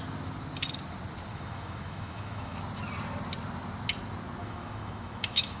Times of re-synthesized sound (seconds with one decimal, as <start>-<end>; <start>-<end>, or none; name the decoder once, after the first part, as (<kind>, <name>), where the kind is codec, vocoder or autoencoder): 1.3-2.6 (autoencoder, DAC-VAE); 4.4-5.6

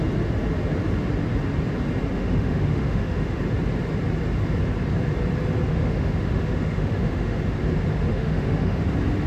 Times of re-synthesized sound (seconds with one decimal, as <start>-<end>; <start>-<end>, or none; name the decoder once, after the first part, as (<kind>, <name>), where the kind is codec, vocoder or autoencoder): 2.1-3.4 (autoencoder, DAC-VAE); 5.7-7.4; 8.1-8.8

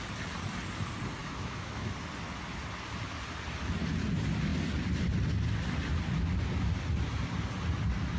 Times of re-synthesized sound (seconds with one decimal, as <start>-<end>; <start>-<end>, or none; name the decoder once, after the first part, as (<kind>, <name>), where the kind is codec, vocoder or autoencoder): 1.2-1.9 (autoencoder, DAC-VAE)

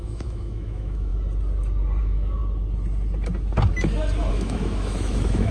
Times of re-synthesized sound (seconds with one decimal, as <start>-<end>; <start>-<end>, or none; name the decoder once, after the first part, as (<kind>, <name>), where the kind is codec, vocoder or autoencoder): 0.0-1.1 (autoencoder, DAC-VAE); 2.0-2.4; 4.3-5.5

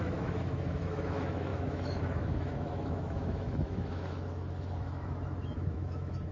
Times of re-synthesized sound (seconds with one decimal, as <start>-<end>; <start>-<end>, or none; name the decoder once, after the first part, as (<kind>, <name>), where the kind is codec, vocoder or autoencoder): 0.0-6.3 (autoencoder, DAC-VAE)